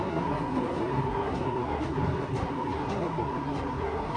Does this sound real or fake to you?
fake